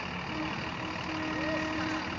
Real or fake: real